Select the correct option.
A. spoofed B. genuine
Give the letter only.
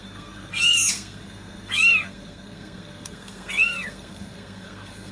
A